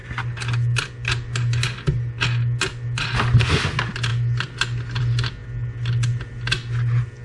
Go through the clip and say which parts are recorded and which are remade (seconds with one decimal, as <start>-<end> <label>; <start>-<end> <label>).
0.0-7.2 recorded